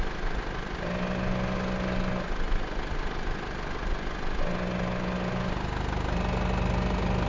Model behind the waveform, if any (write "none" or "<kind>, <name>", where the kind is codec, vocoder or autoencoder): none